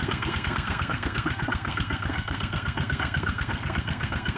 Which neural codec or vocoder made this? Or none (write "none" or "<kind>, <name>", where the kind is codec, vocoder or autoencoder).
codec, SNAC